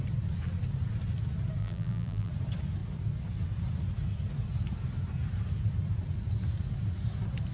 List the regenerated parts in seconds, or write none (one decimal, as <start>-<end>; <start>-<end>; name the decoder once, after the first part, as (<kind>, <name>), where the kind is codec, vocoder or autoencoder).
1.6-2.3 (vocoder, BigVGAN v2)